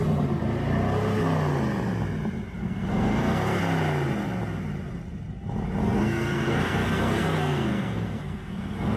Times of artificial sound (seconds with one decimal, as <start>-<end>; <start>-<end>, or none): 2.6-3.6; 5.8-9.0